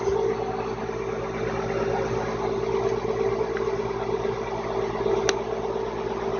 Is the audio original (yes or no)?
yes